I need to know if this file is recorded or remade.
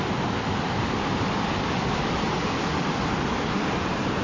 recorded